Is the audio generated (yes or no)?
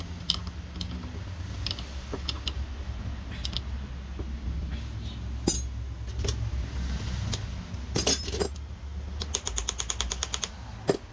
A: no